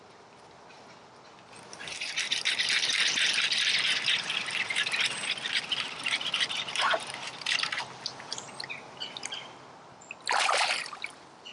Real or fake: real